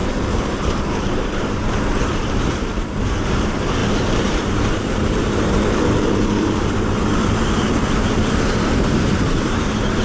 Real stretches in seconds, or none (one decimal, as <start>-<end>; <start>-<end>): none